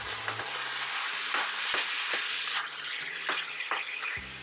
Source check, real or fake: real